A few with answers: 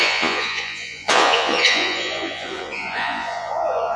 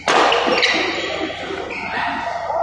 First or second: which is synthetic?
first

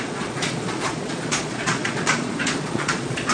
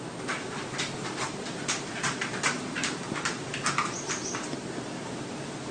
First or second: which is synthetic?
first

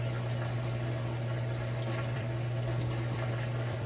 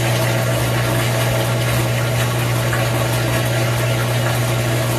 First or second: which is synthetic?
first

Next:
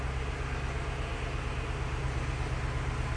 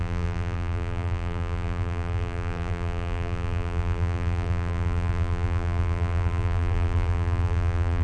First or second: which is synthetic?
second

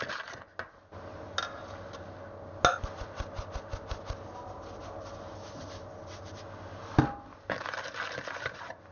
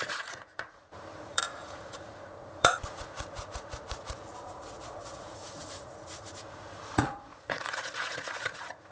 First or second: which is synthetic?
second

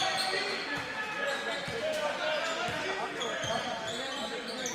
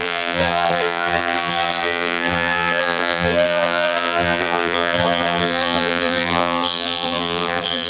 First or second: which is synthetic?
second